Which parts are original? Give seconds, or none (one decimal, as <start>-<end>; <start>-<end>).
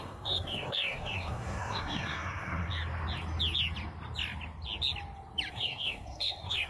2.7-5.5